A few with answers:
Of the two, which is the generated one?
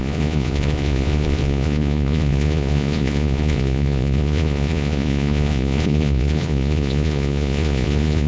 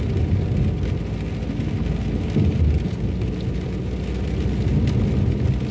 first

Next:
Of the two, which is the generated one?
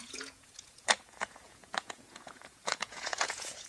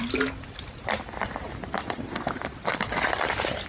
first